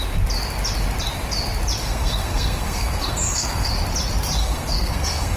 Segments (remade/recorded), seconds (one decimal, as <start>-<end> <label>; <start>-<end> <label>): 0.0-1.8 recorded; 1.8-3.7 remade; 3.7-4.4 recorded; 4.4-5.4 remade